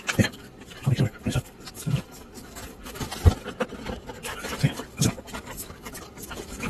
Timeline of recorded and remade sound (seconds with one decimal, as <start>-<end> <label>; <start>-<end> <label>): 0.0-3.1 remade; 3.1-3.9 recorded; 3.9-6.7 remade